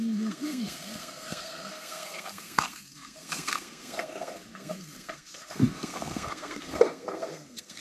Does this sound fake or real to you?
fake